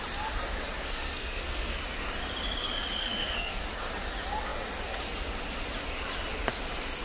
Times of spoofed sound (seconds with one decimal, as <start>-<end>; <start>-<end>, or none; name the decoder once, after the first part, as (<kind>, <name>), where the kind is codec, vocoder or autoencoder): 0.8-1.8 (codec, SNAC); 3.0-3.6